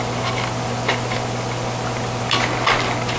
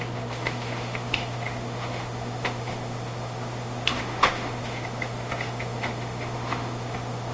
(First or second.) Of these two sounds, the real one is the first